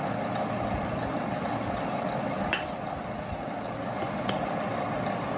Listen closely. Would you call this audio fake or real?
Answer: real